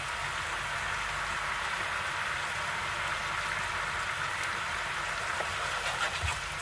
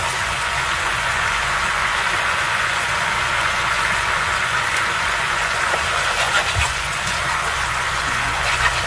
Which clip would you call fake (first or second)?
second